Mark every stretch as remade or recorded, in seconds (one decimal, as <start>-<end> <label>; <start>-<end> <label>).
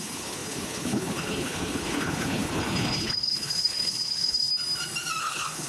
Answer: 0.0-4.5 remade; 4.5-5.2 recorded; 5.2-5.7 remade